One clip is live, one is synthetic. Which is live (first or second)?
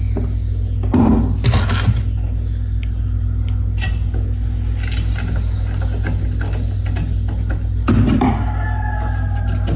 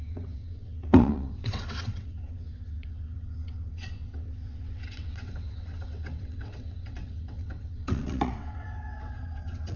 first